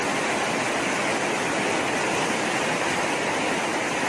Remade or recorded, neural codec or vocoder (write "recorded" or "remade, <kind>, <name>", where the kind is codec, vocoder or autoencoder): recorded